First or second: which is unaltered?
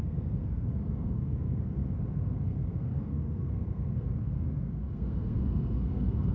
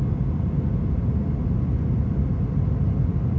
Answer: second